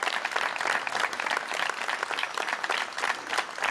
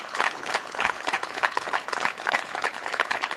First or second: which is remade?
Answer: second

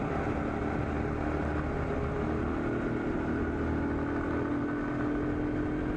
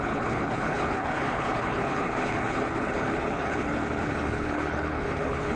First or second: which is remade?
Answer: second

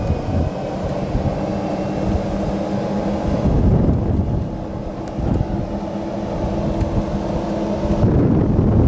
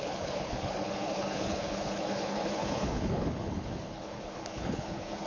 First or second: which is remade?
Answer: second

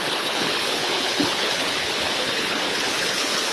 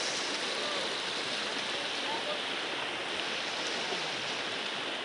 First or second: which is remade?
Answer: first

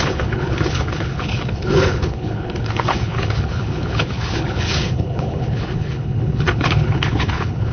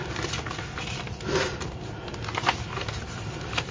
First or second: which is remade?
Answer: first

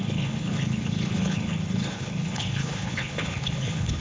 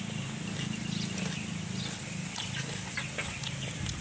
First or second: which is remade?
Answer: first